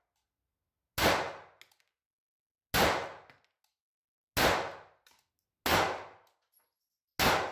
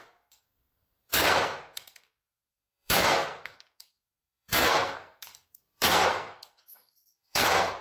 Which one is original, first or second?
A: first